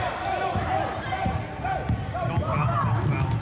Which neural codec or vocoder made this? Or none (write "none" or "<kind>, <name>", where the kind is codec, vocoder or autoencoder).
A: none